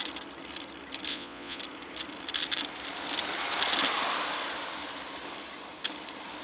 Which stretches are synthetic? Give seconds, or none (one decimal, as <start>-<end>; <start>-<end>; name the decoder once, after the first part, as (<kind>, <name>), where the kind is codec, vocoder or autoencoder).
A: 1.1-1.6 (vocoder, Vocos)